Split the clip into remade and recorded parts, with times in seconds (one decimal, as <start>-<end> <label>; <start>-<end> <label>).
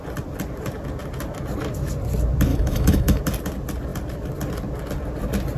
0.0-2.5 recorded; 2.5-3.2 remade; 3.2-5.6 recorded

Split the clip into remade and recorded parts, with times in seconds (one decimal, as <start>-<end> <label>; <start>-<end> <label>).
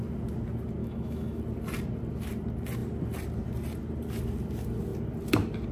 0.0-0.8 recorded; 0.8-1.4 remade; 1.4-5.7 recorded